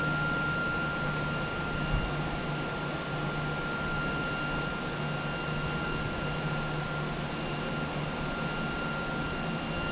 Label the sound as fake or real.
real